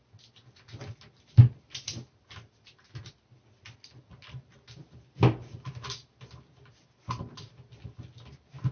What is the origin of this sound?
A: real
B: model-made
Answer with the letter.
A